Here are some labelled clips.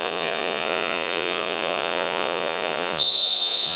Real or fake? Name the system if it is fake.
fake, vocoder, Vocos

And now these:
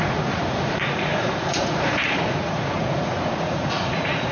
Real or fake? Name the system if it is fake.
fake, vocoder, Vocos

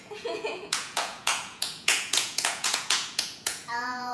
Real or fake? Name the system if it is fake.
fake, vocoder, Vocos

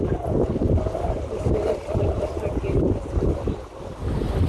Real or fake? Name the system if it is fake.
real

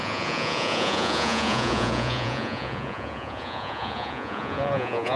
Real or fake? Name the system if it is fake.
fake, vocoder, Vocos